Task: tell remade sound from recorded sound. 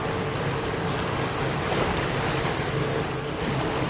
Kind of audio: recorded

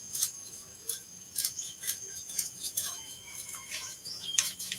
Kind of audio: remade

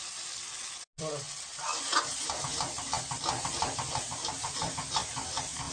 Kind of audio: recorded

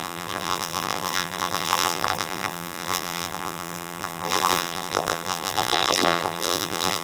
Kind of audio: remade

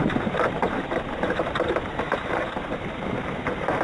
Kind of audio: remade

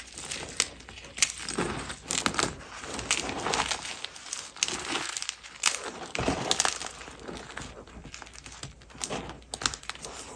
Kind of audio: recorded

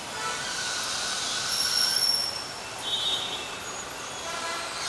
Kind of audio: recorded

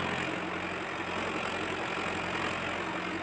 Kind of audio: recorded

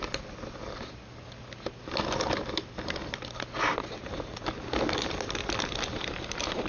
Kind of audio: recorded